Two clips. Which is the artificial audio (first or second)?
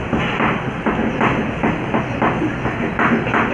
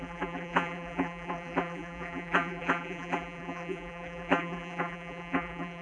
second